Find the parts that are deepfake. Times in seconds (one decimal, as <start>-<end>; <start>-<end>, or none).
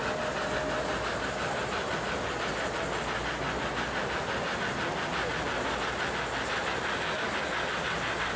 none